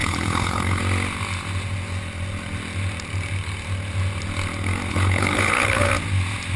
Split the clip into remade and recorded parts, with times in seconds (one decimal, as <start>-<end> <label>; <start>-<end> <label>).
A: 0.0-0.8 remade; 0.8-4.9 recorded; 4.9-5.9 remade; 5.9-6.6 recorded